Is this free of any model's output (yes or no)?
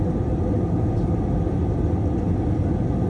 yes